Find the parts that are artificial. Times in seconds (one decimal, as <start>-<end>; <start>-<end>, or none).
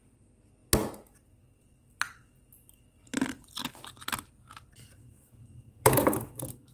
5.0-6.7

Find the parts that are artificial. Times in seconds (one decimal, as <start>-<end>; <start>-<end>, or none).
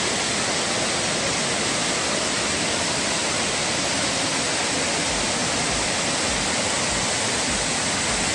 3.2-4.2; 5.4-6.1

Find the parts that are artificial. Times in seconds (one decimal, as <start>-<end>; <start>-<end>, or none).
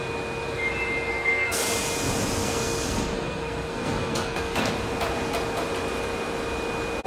1.1-1.6; 2.4-4.7